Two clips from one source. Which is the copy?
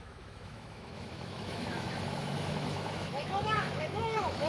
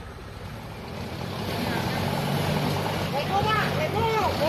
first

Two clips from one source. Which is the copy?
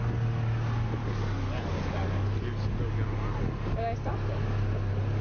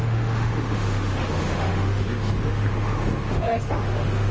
second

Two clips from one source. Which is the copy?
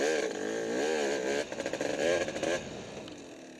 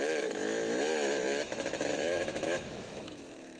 second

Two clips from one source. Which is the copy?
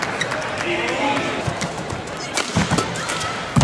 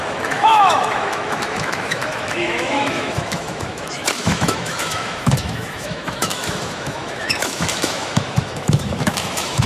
second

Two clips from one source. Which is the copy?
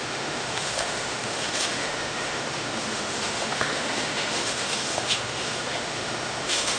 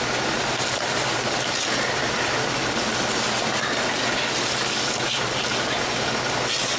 first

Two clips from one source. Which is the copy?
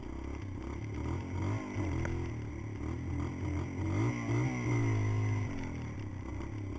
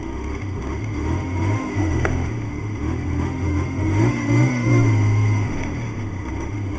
second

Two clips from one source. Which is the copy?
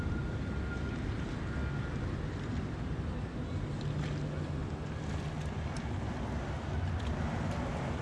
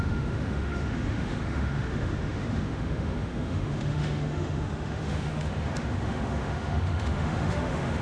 second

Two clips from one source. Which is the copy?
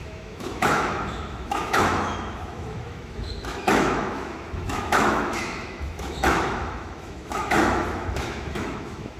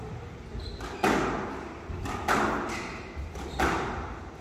first